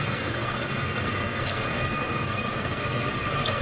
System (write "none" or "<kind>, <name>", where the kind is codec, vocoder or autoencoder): codec, SNAC